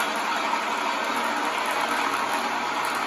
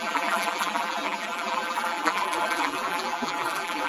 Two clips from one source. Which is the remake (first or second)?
second